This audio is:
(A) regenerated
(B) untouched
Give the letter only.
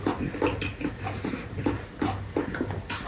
B